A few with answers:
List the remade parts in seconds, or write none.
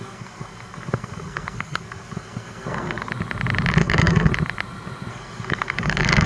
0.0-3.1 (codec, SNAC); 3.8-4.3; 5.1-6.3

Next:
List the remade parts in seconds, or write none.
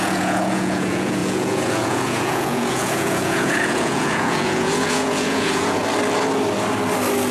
0.0-5.8 (vocoder, Vocos)